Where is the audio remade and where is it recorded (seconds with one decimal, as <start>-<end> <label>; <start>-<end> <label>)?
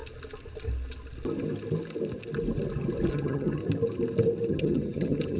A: 0.0-3.1 recorded; 3.1-3.6 remade; 3.6-4.5 recorded; 4.5-5.4 remade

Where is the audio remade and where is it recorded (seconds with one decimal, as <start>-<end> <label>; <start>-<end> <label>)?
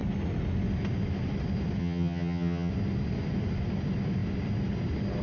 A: 0.0-1.8 recorded; 1.8-2.7 remade; 2.7-5.2 recorded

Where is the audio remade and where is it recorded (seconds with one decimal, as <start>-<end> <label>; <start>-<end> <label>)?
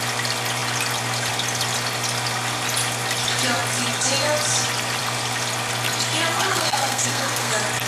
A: 0.0-6.5 recorded; 6.5-7.5 remade; 7.5-7.9 recorded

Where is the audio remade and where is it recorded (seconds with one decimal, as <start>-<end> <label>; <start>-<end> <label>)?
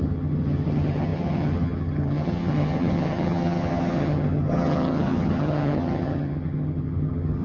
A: 0.0-7.4 remade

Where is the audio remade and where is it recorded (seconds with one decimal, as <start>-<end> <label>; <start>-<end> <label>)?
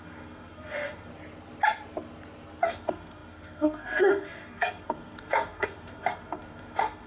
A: 0.0-1.1 remade; 1.1-2.6 recorded; 2.6-7.1 remade